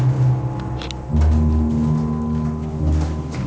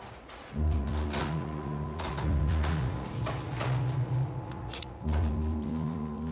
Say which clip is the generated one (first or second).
second